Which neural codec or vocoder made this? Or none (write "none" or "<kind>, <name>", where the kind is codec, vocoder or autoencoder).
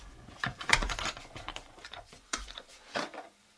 vocoder, Vocos